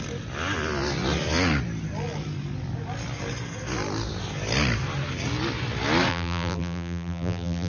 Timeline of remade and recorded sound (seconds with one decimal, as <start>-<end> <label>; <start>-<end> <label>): 0.0-6.1 recorded; 6.1-7.7 remade